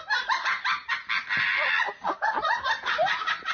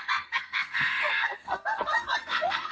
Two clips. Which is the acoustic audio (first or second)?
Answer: first